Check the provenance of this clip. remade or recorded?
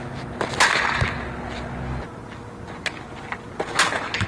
recorded